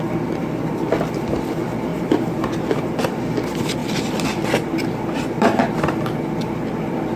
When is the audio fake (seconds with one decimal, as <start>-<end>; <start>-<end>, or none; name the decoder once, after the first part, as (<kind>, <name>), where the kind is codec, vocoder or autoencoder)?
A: 1.9-3.2 (vocoder, BigVGAN v2); 3.8-7.2